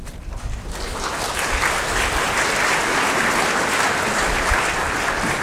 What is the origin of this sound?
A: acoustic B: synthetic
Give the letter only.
A